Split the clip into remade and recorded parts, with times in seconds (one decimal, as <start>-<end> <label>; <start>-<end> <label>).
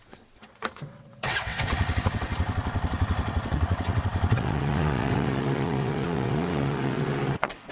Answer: 0.0-7.7 remade